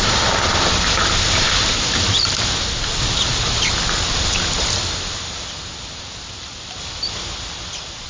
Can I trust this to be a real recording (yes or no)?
yes